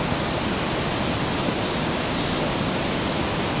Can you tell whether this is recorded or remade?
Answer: recorded